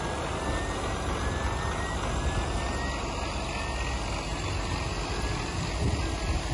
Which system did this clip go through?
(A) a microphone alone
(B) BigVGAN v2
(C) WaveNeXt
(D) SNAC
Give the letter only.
A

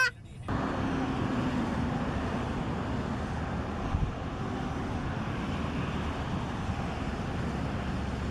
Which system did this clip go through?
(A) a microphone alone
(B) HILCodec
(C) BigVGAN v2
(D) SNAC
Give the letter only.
A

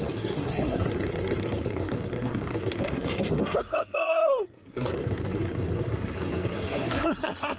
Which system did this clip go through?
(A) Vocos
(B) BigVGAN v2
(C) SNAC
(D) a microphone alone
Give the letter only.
C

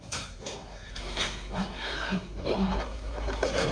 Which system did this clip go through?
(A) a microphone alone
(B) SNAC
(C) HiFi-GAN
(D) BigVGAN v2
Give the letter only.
B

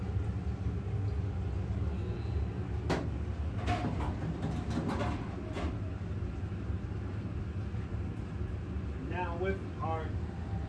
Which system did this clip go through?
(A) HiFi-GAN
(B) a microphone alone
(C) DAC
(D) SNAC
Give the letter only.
B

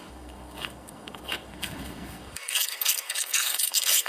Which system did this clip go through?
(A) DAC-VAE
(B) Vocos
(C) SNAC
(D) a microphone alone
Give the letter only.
C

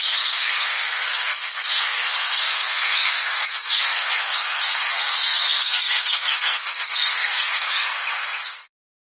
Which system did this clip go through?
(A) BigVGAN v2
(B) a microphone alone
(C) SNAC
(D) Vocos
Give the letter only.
C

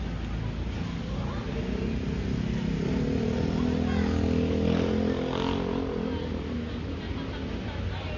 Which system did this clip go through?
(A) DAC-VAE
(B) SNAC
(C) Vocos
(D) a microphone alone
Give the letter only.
D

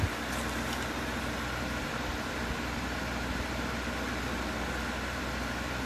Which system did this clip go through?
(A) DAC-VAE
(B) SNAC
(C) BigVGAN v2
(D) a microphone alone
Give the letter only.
D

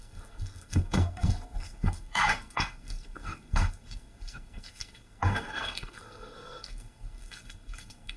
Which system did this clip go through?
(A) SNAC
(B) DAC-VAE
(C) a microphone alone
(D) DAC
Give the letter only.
A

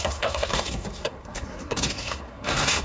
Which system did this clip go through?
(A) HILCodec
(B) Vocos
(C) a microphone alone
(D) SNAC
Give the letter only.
D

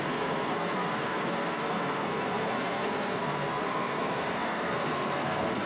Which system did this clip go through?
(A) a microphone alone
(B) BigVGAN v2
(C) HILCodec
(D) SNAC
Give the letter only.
D